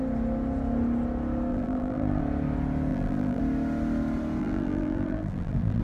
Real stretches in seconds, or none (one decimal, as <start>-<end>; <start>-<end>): 0.0-1.5; 2.2-2.9; 3.4-4.4